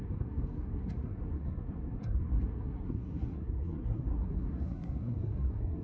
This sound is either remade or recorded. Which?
remade